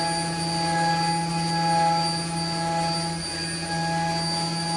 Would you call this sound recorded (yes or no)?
yes